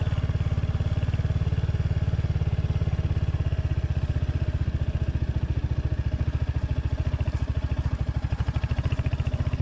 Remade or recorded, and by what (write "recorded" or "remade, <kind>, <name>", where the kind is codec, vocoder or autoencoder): recorded